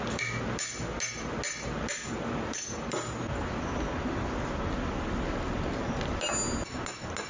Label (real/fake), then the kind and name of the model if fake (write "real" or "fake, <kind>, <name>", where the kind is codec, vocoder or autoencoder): real